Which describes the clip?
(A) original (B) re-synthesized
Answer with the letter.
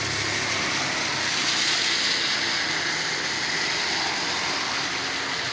A